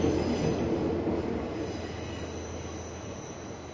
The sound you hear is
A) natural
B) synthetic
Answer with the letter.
A